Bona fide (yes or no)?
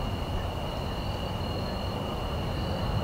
yes